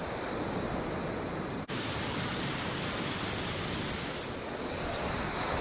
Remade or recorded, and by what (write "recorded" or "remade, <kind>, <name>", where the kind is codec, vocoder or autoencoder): recorded